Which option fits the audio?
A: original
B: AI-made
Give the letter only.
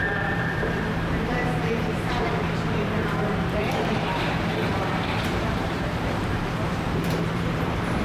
B